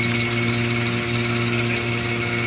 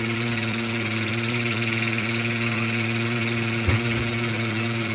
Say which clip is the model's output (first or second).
second